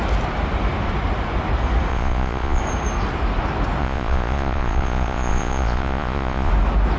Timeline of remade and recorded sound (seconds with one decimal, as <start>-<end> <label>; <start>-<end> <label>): 0.0-1.9 recorded; 1.9-2.6 remade; 2.6-3.8 recorded; 3.8-6.5 remade; 6.5-7.0 recorded